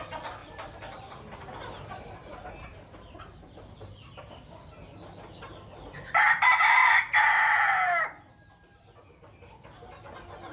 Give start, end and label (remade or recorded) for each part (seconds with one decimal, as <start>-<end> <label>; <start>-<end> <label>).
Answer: 0.0-0.4 recorded; 0.4-3.2 remade; 3.2-10.5 recorded